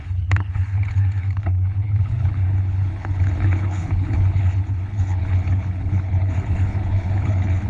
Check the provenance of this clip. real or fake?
fake